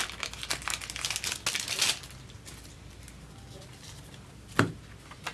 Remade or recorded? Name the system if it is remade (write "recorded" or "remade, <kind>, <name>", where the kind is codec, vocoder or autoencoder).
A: recorded